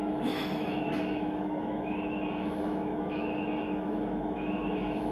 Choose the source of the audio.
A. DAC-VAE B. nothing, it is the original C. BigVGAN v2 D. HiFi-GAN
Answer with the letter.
A